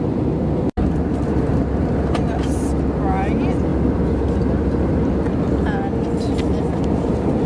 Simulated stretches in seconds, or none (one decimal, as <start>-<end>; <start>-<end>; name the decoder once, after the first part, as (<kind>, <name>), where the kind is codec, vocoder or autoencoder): none